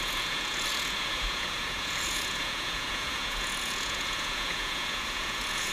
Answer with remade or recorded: remade